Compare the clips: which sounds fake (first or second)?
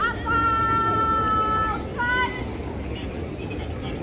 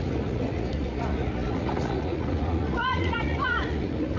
second